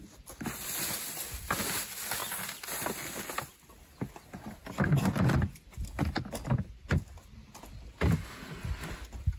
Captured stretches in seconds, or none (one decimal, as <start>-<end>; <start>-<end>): 0.0-9.4